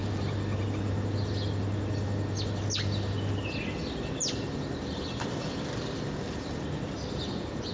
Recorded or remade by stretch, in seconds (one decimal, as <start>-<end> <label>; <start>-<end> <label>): 0.0-7.7 recorded